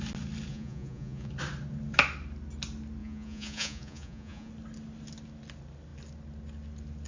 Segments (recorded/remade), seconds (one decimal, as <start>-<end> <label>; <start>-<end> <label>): 0.0-0.5 recorded; 0.5-1.3 remade; 1.3-3.0 recorded; 3.0-4.5 remade; 4.5-7.1 recorded